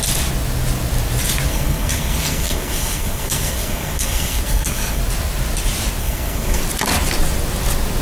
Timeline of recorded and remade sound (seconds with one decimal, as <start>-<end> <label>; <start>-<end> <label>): 0.0-1.5 recorded; 1.5-5.0 remade; 5.0-6.0 recorded; 6.0-6.6 remade; 6.6-8.0 recorded